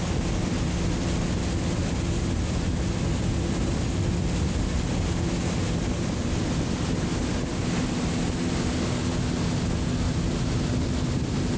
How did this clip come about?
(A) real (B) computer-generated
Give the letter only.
A